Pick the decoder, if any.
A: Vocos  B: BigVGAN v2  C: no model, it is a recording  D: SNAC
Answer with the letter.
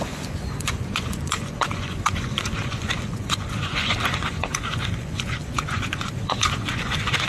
A